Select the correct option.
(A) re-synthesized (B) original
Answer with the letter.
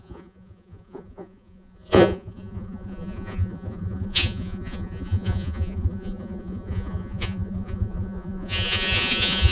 A